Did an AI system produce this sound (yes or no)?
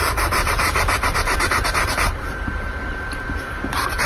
yes